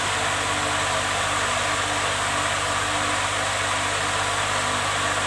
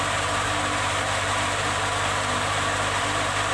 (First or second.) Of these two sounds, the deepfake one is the second